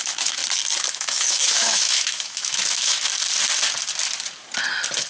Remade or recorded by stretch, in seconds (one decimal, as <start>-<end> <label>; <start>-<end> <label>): 0.0-0.4 remade; 0.4-0.9 recorded; 0.9-3.1 remade; 3.1-5.1 recorded